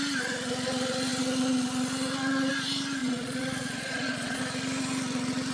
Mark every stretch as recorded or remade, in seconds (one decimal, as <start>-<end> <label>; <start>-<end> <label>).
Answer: 0.0-3.0 recorded; 3.0-4.4 remade; 4.4-5.5 recorded